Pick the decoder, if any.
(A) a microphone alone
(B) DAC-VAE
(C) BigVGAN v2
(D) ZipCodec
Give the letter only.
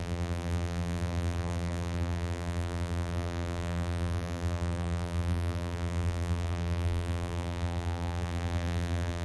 C